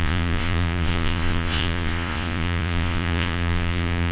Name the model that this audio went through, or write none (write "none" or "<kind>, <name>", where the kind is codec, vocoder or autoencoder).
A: vocoder, Vocos